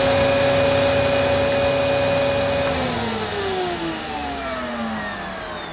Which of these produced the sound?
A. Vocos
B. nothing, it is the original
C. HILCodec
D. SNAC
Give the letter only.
B